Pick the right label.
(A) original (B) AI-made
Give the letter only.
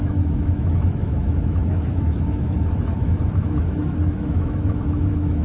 B